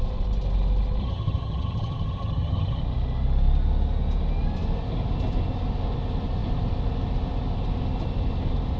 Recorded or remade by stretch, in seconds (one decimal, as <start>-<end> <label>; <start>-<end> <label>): 0.0-1.0 recorded; 1.0-2.8 remade; 2.8-8.8 recorded